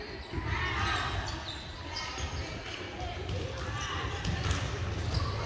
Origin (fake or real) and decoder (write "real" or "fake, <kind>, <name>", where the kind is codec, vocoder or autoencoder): real